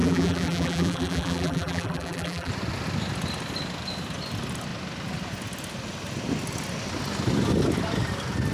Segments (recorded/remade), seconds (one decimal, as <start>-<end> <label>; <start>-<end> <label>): 0.0-2.5 remade; 2.5-8.5 recorded